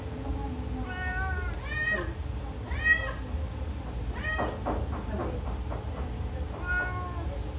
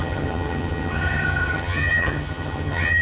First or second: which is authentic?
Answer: first